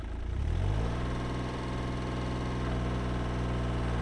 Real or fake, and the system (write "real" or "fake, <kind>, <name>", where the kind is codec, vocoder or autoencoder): real